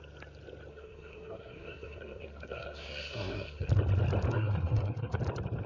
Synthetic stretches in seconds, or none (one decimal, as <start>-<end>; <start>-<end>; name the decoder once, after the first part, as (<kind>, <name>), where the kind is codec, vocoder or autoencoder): 0.7-3.7 (codec, SNAC); 4.3-5.2